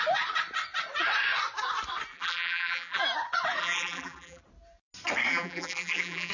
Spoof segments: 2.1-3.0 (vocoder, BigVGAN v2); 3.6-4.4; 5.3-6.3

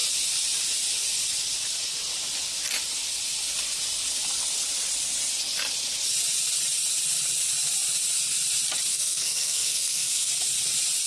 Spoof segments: 8.9-10.3 (codec, SNAC)